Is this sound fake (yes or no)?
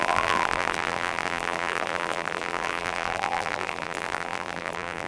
yes